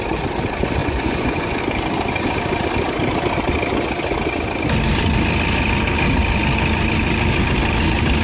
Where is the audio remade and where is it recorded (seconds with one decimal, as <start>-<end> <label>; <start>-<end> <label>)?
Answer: 0.0-0.8 recorded; 0.8-1.6 remade; 1.6-8.2 recorded